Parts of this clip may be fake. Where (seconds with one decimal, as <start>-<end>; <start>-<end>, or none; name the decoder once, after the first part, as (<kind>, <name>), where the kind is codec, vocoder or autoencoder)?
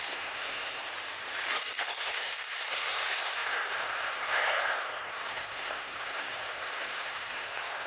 0.0-0.8 (codec, SNAC); 1.8-7.9